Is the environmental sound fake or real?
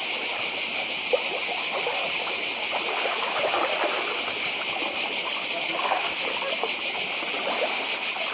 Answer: real